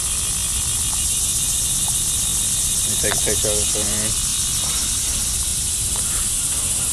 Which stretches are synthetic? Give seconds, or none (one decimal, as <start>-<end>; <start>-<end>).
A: 5.5-6.1